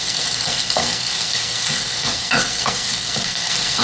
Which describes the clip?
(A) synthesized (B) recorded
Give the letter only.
A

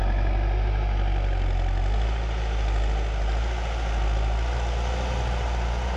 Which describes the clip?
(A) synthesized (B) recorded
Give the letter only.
B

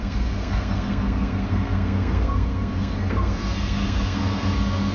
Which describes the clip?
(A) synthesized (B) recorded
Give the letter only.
A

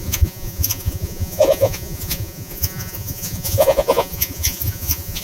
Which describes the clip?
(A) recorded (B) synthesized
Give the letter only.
B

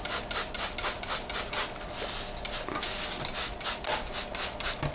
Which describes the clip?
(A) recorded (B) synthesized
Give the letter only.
A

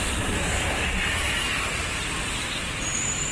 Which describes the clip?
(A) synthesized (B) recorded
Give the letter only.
A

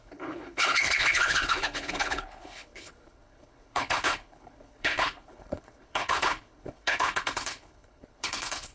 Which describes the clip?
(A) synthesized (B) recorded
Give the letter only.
A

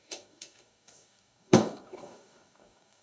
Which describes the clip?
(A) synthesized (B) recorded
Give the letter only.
A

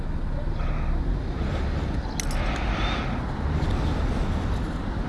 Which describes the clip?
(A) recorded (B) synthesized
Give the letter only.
A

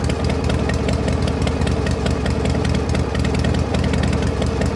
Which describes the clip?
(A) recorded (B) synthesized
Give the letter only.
A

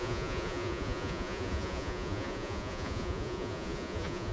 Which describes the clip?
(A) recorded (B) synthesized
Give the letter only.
B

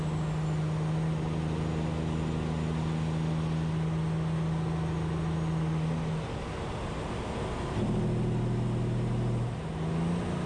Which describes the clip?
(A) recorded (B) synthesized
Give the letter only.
A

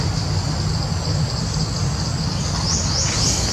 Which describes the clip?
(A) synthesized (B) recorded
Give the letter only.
B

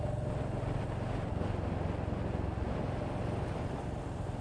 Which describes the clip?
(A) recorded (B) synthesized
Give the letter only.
A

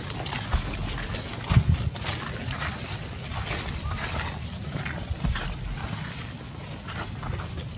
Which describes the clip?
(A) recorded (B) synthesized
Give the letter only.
A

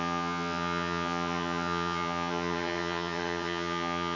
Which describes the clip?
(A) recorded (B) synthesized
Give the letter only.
B